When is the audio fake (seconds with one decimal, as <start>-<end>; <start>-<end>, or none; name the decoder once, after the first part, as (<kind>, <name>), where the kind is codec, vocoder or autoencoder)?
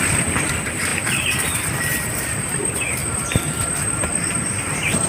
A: 0.0-5.1 (vocoder, BigVGAN v2)